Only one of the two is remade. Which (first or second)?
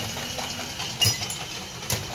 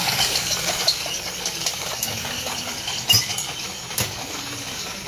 second